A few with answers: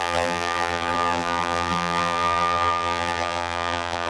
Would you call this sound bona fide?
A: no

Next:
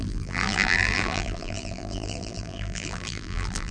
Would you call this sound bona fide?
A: no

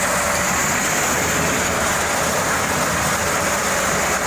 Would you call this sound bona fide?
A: yes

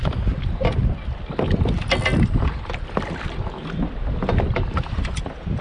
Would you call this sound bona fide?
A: yes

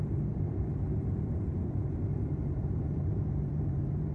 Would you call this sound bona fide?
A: no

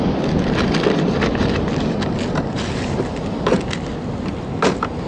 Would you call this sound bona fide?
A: yes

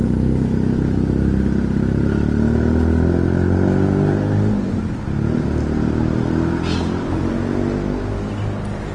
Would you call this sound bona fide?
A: yes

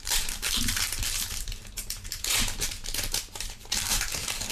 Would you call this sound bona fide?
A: no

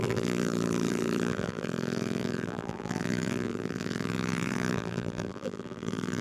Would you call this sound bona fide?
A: no